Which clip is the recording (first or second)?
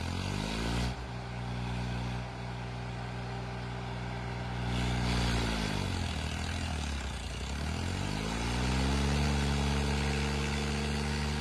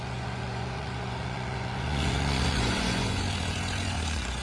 first